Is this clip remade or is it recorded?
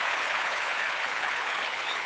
remade